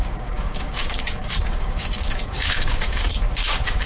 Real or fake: fake